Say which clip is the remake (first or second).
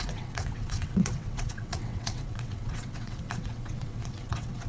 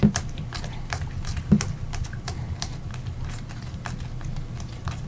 first